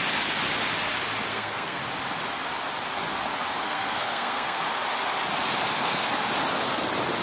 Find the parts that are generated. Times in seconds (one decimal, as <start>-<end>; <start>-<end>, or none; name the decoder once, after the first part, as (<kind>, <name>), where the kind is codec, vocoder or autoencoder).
1.3-1.8 (codec, SNAC); 3.6-4.6